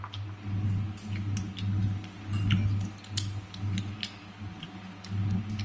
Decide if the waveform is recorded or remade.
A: recorded